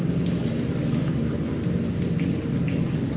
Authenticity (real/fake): real